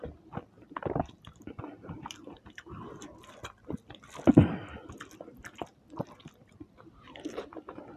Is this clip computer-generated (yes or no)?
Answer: no